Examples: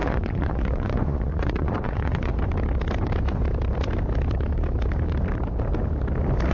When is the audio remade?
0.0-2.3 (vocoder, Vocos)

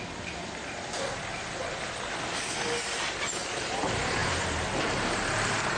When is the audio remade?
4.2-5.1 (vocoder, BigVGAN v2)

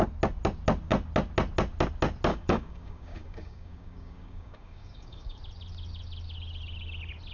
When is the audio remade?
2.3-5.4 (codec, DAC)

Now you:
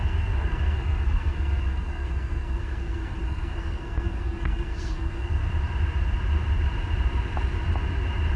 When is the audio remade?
0.0-5.4 (codec, SNAC)

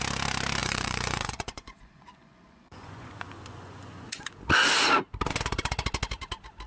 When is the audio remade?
0.6-4.3 (vocoder, Vocos)

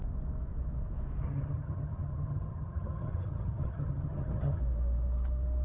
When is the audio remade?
1.2-4.6 (vocoder, HiFi-GAN)